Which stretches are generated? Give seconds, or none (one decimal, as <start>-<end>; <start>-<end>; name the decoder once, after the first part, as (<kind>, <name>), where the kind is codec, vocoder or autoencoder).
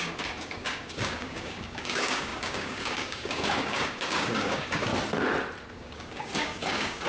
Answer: 0.0-4.9 (codec, DAC); 5.7-7.1